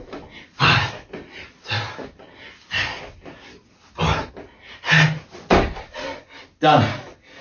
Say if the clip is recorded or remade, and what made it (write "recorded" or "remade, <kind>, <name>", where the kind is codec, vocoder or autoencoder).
recorded